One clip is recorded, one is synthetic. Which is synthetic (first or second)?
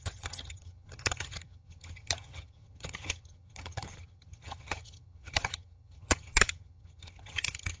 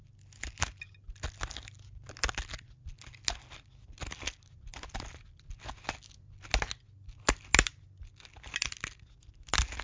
first